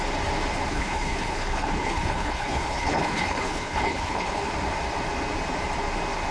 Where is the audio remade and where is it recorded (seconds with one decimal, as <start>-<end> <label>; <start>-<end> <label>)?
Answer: 0.0-0.7 recorded; 0.7-4.5 remade; 4.5-6.3 recorded